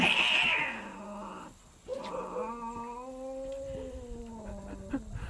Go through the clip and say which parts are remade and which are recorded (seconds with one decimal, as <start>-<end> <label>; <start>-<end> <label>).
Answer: 0.0-5.3 recorded

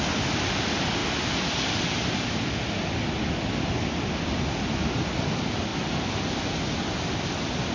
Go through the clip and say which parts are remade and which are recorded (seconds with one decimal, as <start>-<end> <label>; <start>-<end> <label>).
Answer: 0.0-7.7 recorded

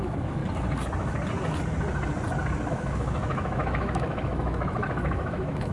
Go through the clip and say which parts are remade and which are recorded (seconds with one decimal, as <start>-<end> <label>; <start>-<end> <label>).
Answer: 0.0-0.4 remade; 0.4-2.7 recorded; 2.7-5.7 remade

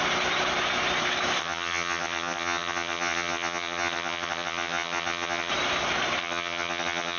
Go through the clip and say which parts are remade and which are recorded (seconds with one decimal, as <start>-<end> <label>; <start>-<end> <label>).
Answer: 0.0-1.4 recorded; 1.4-5.5 remade; 5.5-6.2 recorded; 6.2-7.2 remade

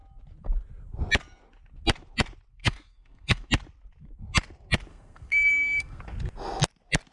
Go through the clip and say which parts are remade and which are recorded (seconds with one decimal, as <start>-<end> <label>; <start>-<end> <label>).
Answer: 0.0-2.5 recorded; 2.5-3.5 remade; 3.5-4.9 recorded; 4.9-6.0 remade; 6.0-7.1 recorded

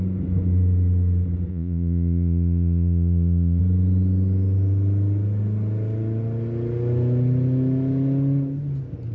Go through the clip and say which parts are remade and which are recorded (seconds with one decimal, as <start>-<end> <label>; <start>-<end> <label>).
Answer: 0.0-1.5 recorded; 1.5-3.6 remade; 3.6-9.1 recorded

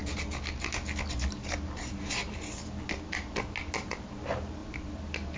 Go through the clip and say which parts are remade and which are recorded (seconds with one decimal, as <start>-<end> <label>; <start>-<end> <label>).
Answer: 0.0-4.6 recorded; 4.6-5.4 remade